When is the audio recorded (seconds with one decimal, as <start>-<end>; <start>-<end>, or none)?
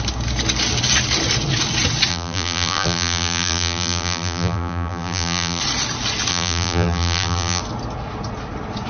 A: 0.0-2.1; 5.6-6.3; 7.6-8.9